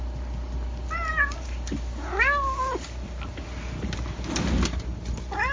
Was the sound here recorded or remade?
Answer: recorded